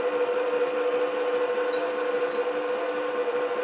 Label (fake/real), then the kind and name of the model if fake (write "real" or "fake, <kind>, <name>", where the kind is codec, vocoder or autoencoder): real